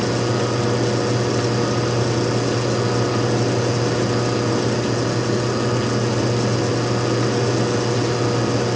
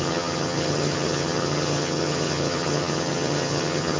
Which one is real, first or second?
first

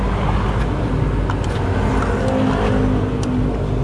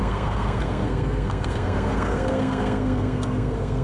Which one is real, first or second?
first